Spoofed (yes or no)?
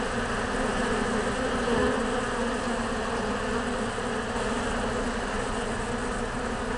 no